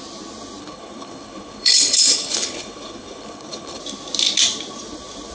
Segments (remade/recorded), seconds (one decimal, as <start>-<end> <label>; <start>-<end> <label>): 0.0-0.6 recorded; 0.6-3.8 remade; 3.8-5.3 recorded